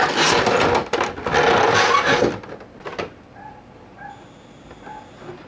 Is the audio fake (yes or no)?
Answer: no